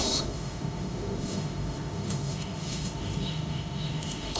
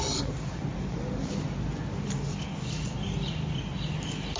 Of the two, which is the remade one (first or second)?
first